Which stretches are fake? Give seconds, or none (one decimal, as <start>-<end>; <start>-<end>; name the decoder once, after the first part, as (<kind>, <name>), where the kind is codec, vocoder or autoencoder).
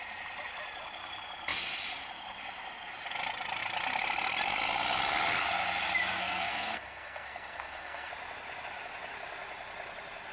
6.2-8.1 (codec, SNAC)